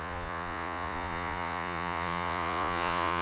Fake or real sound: fake